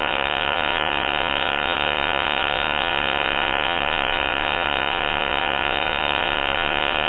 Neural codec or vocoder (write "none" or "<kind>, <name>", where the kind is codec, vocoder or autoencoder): vocoder, WaveNeXt